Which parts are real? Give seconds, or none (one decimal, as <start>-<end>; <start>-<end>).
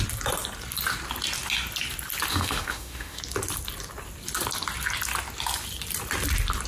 0.0-2.3; 3.2-6.7